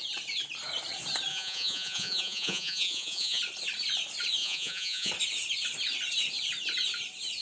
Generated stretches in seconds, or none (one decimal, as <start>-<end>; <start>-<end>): 1.3-3.4; 4.4-5.1